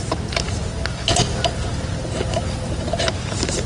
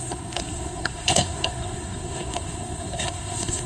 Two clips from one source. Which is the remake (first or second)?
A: second